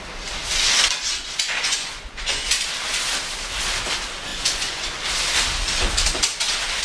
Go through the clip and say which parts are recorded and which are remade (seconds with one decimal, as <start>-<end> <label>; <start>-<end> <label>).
0.0-1.1 recorded; 1.1-2.5 remade; 2.5-4.3 recorded; 4.3-5.0 remade; 5.0-6.8 recorded